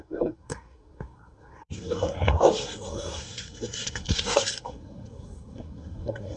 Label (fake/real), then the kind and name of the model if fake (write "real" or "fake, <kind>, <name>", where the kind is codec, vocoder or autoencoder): fake, codec, SNAC